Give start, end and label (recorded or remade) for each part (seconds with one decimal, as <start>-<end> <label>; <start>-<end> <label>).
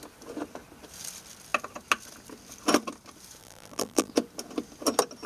0.0-3.4 recorded; 3.4-4.1 remade; 4.1-5.3 recorded